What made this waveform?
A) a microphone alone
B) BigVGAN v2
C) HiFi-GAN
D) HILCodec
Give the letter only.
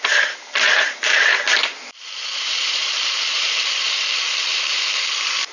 B